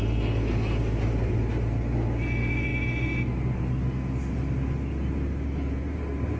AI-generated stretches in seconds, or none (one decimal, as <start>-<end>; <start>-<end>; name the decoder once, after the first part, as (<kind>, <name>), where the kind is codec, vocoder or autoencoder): none